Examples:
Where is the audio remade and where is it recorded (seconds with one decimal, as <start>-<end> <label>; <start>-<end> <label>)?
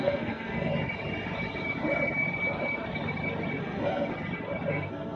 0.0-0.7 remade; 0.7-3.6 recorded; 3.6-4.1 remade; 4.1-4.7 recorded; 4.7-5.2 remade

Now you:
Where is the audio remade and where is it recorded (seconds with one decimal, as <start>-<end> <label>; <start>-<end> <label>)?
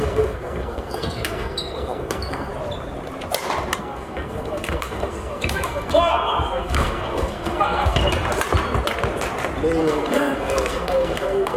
0.0-2.5 remade; 2.5-3.8 recorded; 3.8-8.0 remade; 8.0-9.8 recorded; 9.8-11.6 remade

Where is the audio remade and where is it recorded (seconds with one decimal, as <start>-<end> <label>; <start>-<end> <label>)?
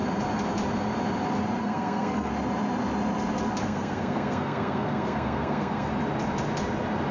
0.0-1.6 recorded; 1.6-2.3 remade; 2.3-3.6 recorded; 3.6-5.9 remade; 5.9-7.1 recorded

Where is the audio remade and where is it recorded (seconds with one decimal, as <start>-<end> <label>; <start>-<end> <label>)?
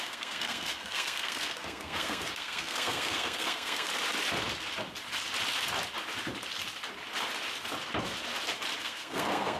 0.0-3.9 remade; 3.9-8.8 recorded; 8.8-9.6 remade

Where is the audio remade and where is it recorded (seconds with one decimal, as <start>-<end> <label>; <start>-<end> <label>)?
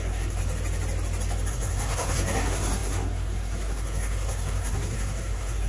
0.0-0.4 remade; 0.4-1.5 recorded; 1.5-5.7 remade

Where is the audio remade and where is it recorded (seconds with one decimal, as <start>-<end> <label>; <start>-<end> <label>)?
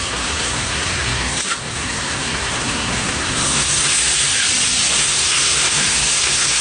0.0-4.3 remade; 4.3-4.9 recorded; 4.9-6.6 remade